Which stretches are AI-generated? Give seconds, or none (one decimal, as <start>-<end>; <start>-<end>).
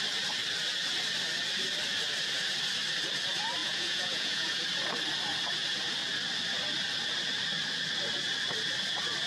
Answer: 3.6-4.6